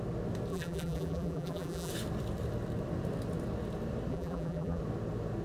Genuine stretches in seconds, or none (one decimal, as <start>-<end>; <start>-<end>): 0.0-0.5; 1.9-4.1; 4.8-5.4

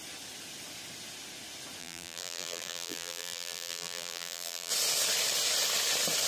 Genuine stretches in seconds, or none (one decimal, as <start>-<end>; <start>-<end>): 0.0-1.8; 4.7-6.3

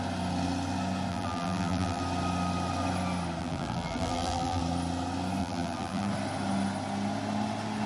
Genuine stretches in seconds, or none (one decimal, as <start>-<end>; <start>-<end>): 0.0-1.1; 2.0-3.4; 4.6-5.4; 6.1-7.9